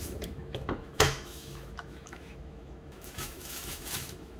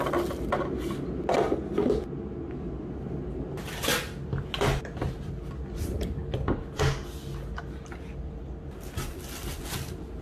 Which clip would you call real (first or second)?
second